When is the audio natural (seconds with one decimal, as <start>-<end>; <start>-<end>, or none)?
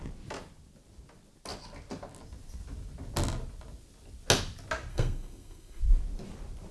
0.0-4.9; 5.8-6.7